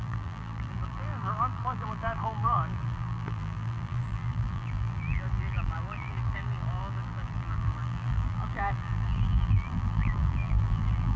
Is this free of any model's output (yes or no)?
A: no